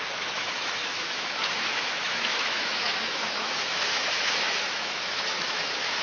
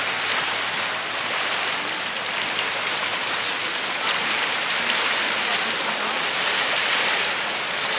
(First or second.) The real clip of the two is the second